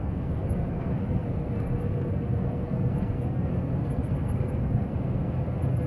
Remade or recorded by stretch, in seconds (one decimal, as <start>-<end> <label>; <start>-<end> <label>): 0.0-5.9 remade